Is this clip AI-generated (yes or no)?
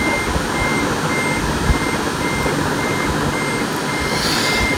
no